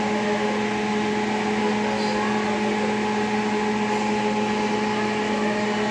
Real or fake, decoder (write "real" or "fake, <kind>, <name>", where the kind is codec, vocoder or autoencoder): real